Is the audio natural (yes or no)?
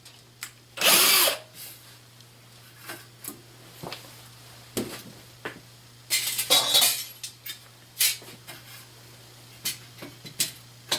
yes